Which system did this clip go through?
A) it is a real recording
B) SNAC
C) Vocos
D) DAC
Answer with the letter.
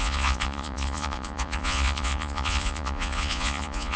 C